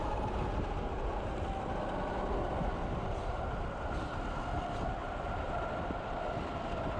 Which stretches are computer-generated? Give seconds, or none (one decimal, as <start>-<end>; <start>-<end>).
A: 5.0-5.6